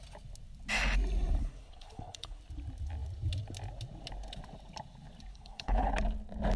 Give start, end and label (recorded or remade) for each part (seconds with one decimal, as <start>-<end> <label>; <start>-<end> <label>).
0.0-1.4 recorded; 1.4-2.4 remade; 2.4-5.3 recorded; 5.3-5.9 remade; 5.9-6.6 recorded